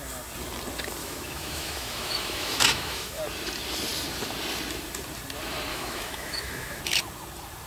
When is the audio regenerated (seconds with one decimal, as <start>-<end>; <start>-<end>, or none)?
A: 1.0-3.2; 5.7-6.8